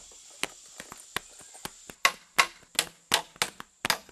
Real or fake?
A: real